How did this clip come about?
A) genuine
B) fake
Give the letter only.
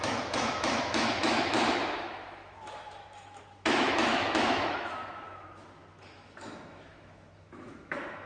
B